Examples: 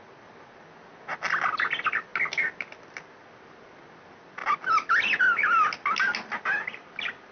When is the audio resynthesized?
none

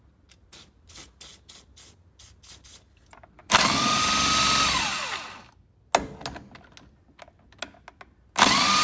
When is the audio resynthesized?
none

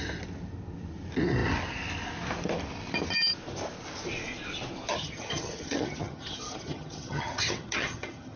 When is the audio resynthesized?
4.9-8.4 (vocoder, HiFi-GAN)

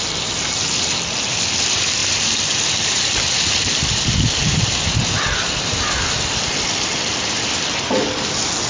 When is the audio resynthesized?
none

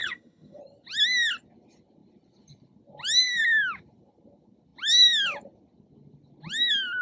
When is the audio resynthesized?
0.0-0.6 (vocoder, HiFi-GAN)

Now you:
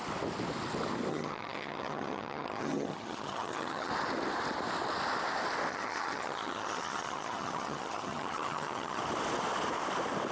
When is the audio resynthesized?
1.1-3.9 (vocoder, HiFi-GAN); 5.7-9.0

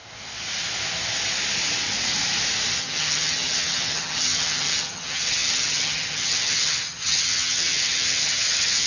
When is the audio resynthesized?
2.8-8.9 (vocoder, HiFi-GAN)